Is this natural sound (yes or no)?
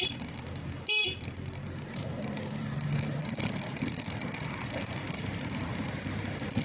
no